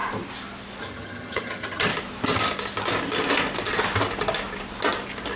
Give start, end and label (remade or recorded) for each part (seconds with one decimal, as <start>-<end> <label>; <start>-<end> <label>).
0.0-0.8 recorded; 0.8-1.9 remade; 1.9-5.4 recorded

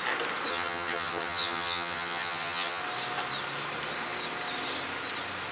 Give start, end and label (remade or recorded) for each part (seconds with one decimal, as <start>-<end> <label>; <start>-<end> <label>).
0.0-0.5 recorded; 0.5-2.8 remade; 2.8-5.5 recorded

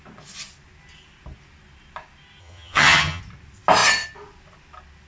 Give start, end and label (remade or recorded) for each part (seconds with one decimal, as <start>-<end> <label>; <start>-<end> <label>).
0.0-2.4 recorded; 2.4-3.2 remade; 3.2-5.1 recorded

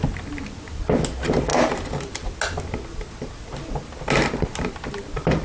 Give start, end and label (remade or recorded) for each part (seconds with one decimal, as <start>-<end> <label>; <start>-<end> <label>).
0.0-5.4 recorded

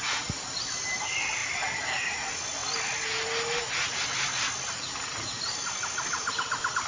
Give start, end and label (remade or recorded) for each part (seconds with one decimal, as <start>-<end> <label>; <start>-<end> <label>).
0.0-6.9 recorded